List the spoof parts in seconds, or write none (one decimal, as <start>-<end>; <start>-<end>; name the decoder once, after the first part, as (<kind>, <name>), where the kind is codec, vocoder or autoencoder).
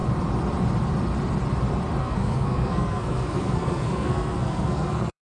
2.0-5.3 (codec, SNAC)